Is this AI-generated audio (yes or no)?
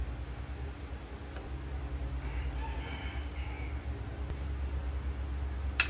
no